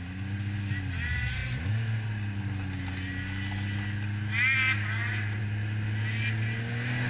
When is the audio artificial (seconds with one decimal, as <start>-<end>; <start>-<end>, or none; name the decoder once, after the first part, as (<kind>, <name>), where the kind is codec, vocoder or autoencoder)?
none

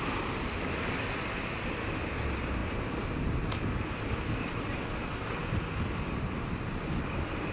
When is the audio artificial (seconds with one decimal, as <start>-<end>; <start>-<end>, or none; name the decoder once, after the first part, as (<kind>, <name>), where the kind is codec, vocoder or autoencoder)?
none

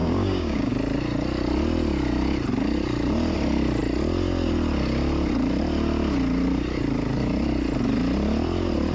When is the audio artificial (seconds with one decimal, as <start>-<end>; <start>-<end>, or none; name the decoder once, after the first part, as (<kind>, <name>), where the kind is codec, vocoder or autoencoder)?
0.0-0.7 (codec, DAC)

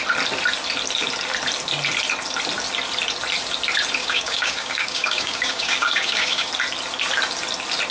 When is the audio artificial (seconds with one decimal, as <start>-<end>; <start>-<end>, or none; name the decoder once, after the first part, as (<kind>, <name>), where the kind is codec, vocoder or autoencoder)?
4.0-6.5 (codec, DAC)

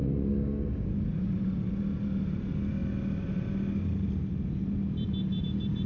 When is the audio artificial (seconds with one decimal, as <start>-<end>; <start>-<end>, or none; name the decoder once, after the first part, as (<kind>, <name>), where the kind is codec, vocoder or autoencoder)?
0.0-0.9 (codec, DAC)